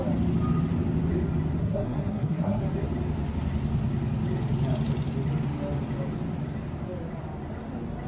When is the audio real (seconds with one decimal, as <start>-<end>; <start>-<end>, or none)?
0.0-1.6; 2.6-8.1